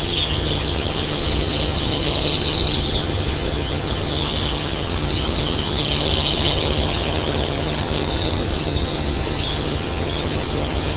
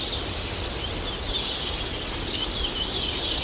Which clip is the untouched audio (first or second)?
second